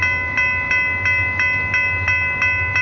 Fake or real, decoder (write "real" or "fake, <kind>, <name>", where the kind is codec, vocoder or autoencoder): real